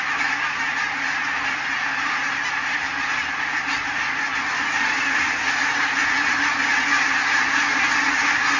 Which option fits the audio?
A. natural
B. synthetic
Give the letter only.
A